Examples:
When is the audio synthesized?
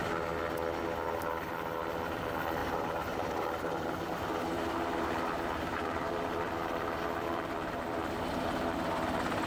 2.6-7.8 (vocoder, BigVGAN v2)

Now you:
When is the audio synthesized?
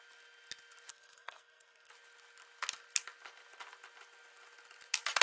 0.9-1.9 (codec, SNAC)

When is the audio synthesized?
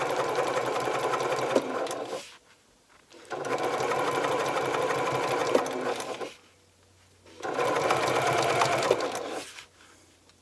none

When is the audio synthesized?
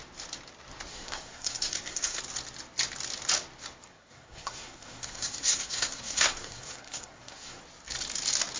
0.9-2.2 (codec, SNAC); 3.9-7.6